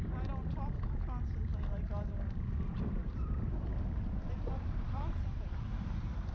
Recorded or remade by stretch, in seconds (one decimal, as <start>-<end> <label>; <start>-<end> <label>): 0.0-3.0 recorded; 3.0-3.7 remade; 3.7-6.3 recorded